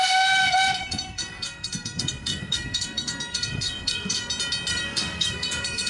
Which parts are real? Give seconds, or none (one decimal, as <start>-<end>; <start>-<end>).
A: 0.0-0.8; 4.3-4.7